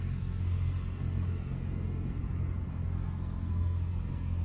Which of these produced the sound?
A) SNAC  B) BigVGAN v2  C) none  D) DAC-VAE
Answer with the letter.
A